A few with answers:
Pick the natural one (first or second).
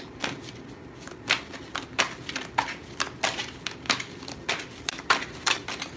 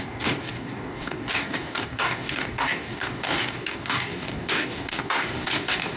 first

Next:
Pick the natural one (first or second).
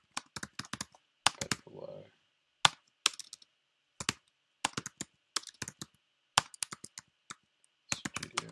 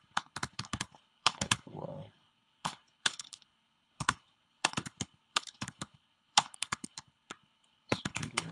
first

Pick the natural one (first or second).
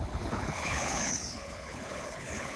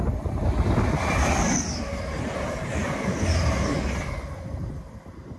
second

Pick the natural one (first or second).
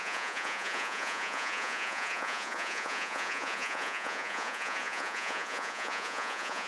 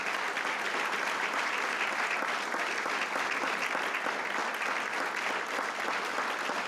second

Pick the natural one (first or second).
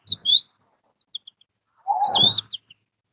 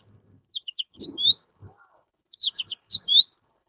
first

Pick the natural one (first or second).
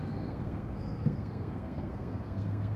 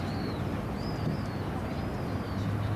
second